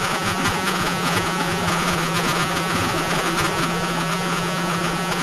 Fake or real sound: fake